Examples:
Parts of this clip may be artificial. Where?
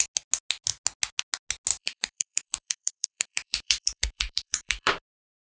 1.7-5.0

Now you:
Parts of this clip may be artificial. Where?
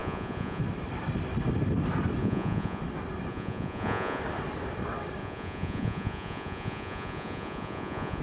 0.0-0.6; 2.2-2.8; 3.3-4.2; 5.2-8.2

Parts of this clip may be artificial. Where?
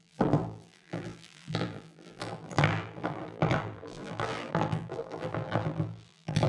0.0-6.5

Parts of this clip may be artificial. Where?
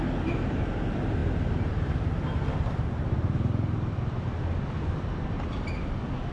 none